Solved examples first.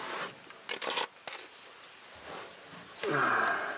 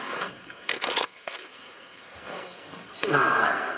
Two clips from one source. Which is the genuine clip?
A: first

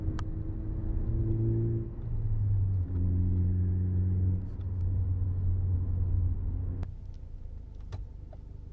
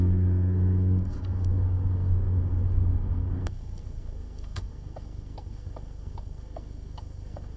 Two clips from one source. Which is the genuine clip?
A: first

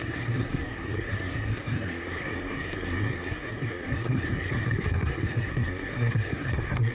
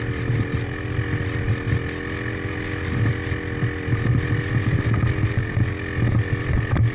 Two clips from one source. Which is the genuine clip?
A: second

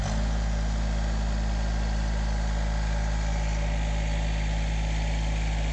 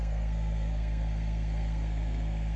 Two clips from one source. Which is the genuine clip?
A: first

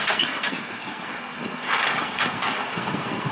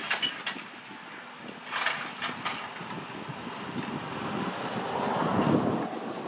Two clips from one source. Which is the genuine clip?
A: second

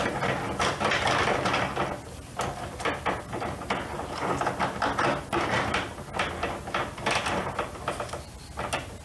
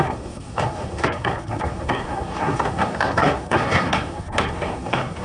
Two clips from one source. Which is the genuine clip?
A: first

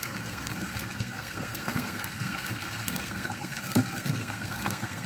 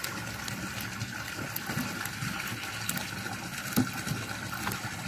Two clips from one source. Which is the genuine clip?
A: second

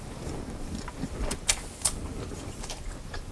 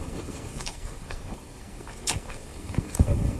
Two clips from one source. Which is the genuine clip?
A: first